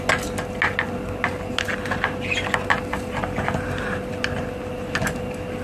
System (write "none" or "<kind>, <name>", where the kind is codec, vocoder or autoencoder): none